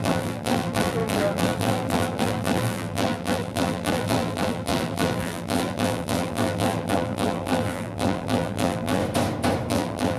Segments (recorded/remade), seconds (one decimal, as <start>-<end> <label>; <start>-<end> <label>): 0.0-9.0 remade; 9.0-9.7 recorded; 9.7-10.2 remade